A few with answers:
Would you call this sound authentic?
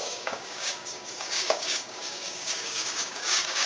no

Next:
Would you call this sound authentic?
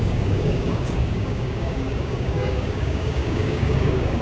no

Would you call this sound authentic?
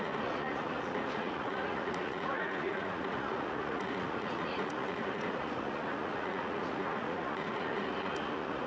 no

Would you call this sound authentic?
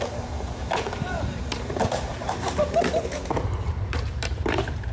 no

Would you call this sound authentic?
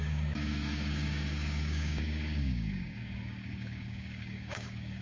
no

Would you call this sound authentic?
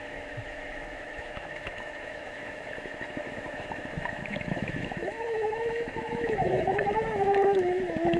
no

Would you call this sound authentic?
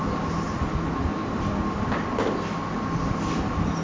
yes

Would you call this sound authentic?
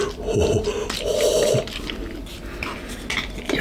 yes